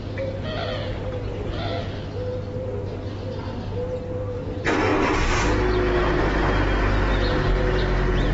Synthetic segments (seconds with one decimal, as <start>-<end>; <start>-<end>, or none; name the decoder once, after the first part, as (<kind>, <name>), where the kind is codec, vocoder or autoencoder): none